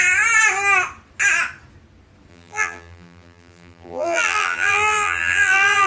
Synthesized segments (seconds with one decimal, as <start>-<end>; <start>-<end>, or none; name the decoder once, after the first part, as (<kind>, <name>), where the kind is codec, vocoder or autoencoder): 2.3-5.9 (vocoder, BigVGAN v2)